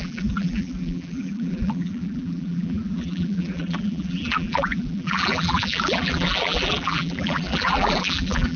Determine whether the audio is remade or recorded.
remade